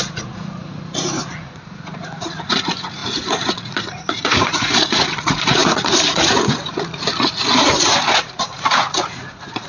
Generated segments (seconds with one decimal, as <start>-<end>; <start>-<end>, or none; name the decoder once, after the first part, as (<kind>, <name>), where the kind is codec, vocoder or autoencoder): 0.0-9.7 (vocoder, Vocos)